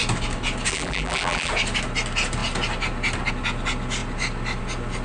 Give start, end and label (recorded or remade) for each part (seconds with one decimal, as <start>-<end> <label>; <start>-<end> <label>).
0.0-0.7 recorded; 0.7-1.5 remade; 1.5-5.0 recorded